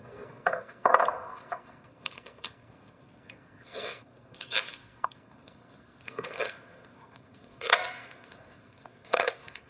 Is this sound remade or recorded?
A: remade